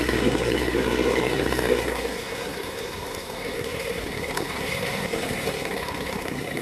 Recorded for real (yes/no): no